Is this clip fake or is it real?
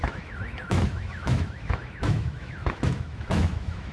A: fake